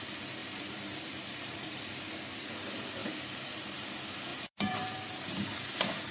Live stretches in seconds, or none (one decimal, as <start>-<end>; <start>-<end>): 0.0-0.4; 1.8-3.0; 3.7-4.3